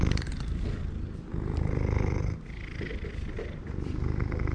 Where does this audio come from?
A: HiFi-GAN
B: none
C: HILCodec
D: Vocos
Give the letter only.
B